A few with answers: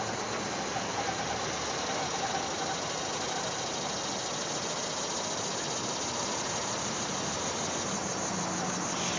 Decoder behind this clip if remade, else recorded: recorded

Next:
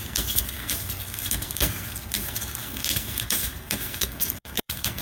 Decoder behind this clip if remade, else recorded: remade, codec, SNAC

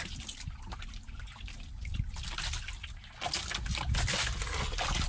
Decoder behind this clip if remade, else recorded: recorded